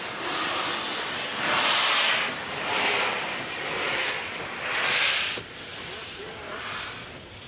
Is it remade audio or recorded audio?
recorded